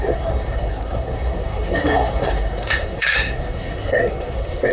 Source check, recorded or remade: remade